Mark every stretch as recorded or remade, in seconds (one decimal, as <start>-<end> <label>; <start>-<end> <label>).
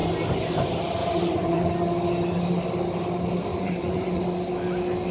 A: 0.0-1.0 recorded; 1.0-1.7 remade; 1.7-3.5 recorded; 3.5-4.2 remade; 4.2-5.1 recorded